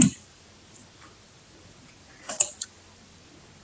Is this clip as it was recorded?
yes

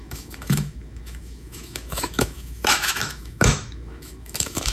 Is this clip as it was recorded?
no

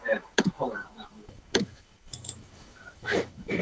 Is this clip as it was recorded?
no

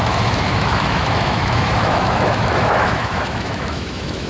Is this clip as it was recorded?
no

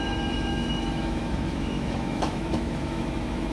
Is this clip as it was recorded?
no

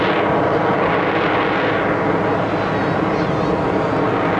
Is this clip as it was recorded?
yes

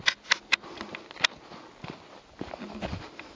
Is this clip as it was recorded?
yes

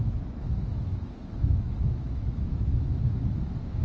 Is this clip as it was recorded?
no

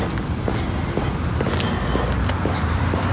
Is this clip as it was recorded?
yes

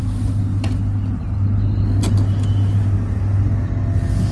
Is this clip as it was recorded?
yes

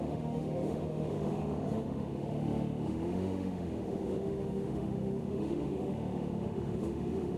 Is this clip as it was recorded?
no